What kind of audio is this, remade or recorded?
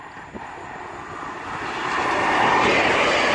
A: recorded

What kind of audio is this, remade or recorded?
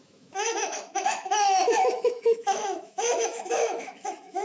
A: remade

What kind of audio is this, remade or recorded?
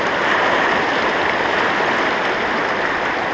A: recorded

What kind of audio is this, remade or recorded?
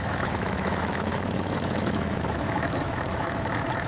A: remade